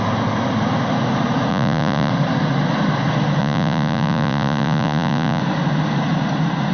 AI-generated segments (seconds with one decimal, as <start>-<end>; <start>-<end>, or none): 1.5-2.1; 3.4-5.4